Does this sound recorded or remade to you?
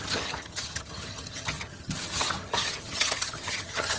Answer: remade